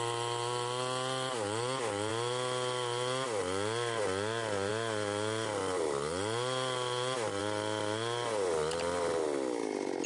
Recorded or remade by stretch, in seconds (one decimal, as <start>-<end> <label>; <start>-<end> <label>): 0.0-10.1 recorded